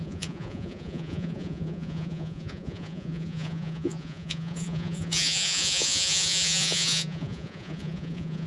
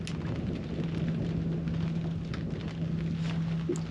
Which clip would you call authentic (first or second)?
second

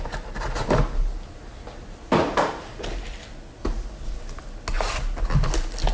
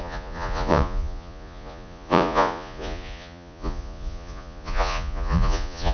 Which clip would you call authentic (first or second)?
first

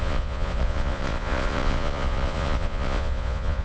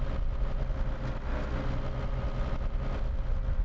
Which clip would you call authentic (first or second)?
second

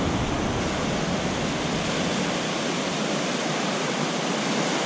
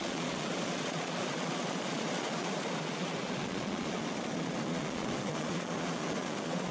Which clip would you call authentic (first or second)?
first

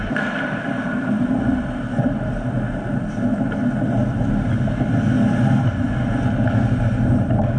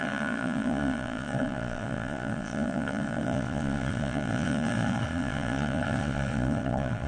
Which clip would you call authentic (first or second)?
first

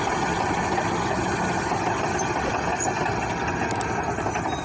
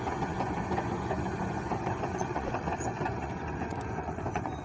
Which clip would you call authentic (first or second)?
first